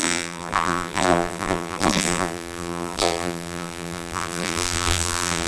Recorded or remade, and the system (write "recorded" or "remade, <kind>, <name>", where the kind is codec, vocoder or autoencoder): remade, vocoder, BigVGAN v2